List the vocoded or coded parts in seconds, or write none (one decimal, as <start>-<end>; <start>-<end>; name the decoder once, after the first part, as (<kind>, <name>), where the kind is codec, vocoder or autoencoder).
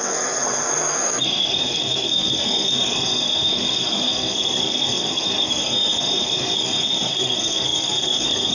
0.0-8.5 (codec, SNAC)